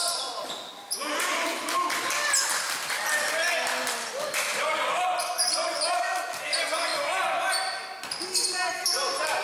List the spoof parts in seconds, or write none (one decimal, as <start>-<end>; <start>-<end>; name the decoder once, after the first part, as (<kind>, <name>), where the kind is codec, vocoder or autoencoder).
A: 4.5-5.3 (vocoder, BigVGAN v2)

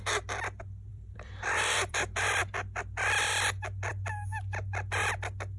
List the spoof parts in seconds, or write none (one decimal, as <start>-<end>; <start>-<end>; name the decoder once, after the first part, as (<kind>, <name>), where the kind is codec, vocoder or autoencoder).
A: 0.9-2.4 (vocoder, BigVGAN v2)

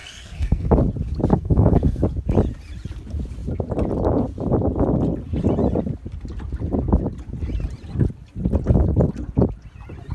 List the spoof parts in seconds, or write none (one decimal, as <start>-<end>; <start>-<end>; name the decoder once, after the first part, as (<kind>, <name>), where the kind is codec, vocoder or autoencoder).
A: 0.0-0.7 (codec, SNAC); 1.3-2.0